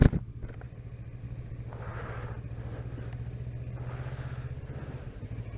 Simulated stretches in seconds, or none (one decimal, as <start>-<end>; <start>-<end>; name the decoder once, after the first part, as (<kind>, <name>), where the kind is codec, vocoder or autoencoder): 1.2-5.6 (vocoder, BigVGAN v2)

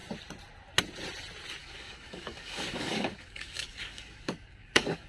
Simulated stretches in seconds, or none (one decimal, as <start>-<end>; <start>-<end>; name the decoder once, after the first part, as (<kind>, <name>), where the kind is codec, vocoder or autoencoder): 1.6-5.1 (codec, DAC)

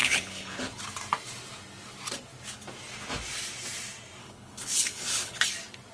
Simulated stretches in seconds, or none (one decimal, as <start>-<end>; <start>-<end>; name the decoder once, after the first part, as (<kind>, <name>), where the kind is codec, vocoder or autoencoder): 0.0-0.8 (codec, HILCodec); 4.2-5.4

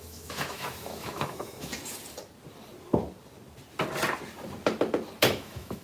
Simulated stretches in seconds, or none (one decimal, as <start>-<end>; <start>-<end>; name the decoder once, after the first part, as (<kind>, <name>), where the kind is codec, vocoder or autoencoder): 0.0-1.7 (autoencoder, DAC-VAE); 5.2-5.8

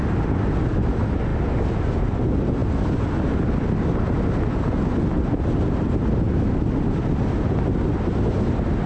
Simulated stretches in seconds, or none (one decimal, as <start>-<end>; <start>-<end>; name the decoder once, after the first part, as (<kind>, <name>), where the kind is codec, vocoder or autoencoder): none